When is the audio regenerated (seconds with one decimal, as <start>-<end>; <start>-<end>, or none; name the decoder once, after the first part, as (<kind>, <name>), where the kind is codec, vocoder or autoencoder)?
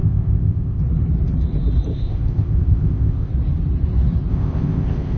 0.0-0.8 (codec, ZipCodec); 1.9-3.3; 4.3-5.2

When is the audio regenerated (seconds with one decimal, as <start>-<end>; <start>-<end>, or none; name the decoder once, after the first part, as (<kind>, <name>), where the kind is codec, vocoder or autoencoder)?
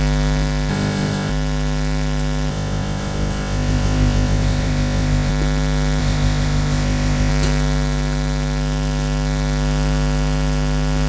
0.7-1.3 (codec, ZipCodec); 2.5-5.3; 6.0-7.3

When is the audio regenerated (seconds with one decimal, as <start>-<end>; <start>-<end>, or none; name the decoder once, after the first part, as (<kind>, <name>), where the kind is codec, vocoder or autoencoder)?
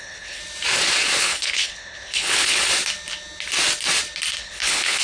0.0-0.4 (codec, HILCodec); 1.2-2.6; 4.4-5.0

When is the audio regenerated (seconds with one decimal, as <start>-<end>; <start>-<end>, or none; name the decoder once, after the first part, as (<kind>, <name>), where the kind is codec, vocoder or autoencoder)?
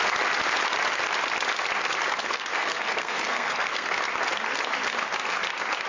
2.2-4.0 (codec, SNAC)